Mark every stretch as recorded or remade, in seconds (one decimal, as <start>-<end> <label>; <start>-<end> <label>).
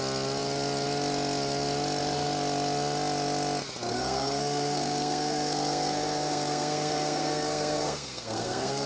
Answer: 0.0-3.9 recorded; 3.9-8.9 remade